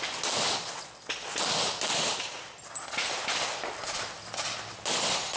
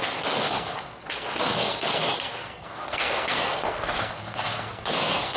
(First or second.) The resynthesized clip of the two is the second